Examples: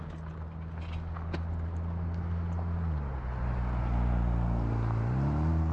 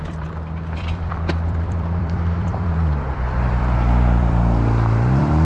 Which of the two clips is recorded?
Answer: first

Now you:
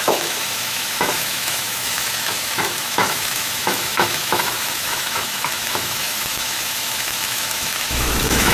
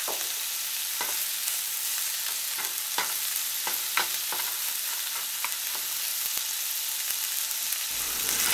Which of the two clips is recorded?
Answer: second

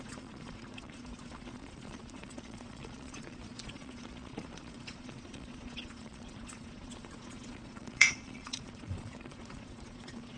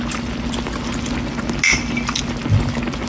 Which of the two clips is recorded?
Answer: second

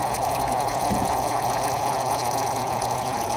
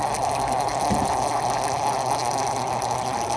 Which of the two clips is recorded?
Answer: second